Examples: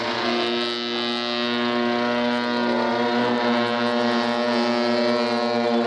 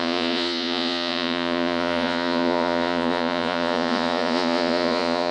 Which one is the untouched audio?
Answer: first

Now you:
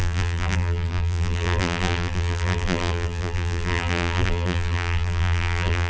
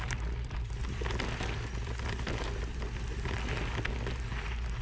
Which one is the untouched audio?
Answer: second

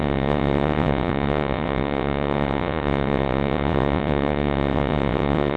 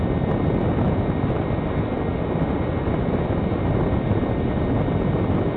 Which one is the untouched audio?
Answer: second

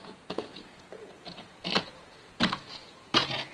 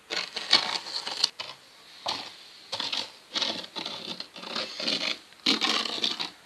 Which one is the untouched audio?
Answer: second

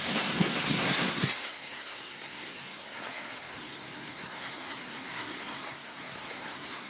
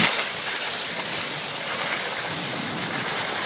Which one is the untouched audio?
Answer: second